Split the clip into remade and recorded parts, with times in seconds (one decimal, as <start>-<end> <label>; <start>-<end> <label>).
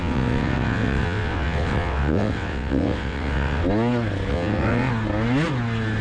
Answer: 0.0-3.6 remade; 3.6-4.3 recorded; 4.3-4.9 remade; 4.9-6.0 recorded